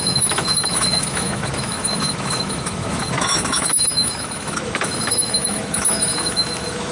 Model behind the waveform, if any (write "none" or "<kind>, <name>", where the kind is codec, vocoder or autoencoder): autoencoder, DAC-VAE